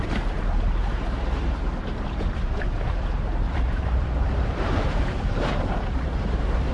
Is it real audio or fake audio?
fake